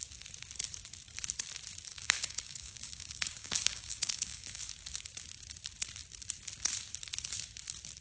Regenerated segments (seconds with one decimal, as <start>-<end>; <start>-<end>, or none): 1.9-4.6